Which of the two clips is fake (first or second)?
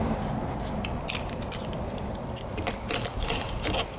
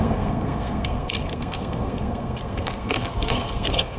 second